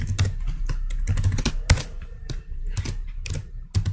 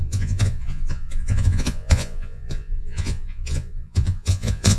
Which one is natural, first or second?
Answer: first